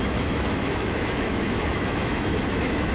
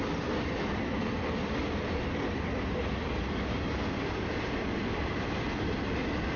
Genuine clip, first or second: second